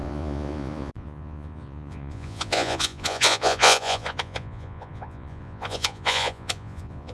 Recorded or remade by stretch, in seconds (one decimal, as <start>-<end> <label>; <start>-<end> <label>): 0.0-7.1 remade